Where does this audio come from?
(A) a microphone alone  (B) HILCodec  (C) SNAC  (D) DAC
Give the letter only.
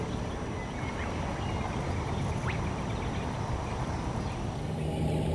A